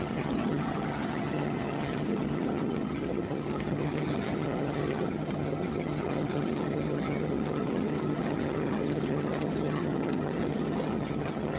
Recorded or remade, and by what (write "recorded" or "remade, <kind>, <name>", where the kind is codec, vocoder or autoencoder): remade, vocoder, HiFi-GAN